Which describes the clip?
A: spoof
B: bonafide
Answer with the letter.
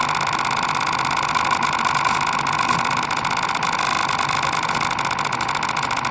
B